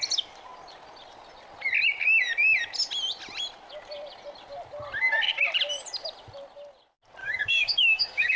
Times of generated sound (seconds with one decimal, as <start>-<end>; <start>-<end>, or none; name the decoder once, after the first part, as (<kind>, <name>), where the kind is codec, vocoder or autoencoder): 7.2-8.4 (codec, DAC)